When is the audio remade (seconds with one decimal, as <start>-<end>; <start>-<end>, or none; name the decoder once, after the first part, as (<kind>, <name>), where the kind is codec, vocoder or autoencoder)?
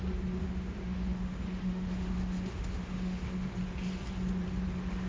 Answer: 0.4-3.5 (autoencoder, DAC-VAE)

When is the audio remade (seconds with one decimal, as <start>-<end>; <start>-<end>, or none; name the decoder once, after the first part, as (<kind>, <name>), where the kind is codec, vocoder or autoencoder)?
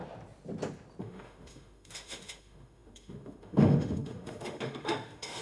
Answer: 1.0-5.4 (autoencoder, DAC-VAE)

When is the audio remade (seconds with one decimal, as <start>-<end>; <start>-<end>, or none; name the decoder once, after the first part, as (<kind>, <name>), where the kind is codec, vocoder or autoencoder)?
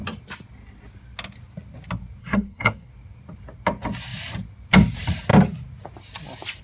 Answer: 2.2-2.9 (codec, SNAC)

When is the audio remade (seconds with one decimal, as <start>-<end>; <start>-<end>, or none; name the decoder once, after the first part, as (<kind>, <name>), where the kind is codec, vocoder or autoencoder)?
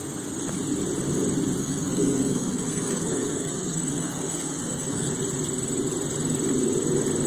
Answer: 1.6-5.1 (codec, SNAC)